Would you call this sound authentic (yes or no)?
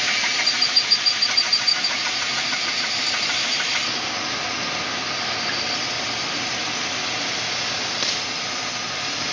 yes